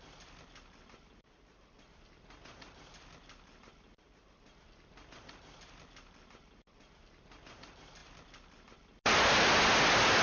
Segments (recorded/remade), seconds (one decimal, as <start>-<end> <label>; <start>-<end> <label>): 0.0-10.2 recorded